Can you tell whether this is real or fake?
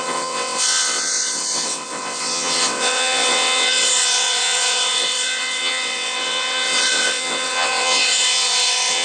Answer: fake